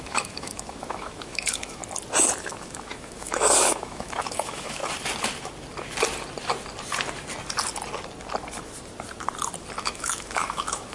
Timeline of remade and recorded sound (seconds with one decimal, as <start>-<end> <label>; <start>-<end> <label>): 0.0-1.8 remade; 1.8-2.4 recorded; 2.4-4.8 remade; 4.8-9.8 recorded; 9.8-10.9 remade